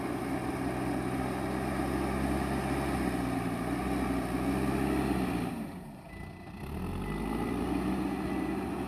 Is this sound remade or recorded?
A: recorded